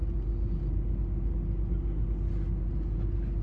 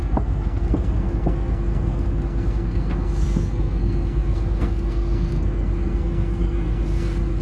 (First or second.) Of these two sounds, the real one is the first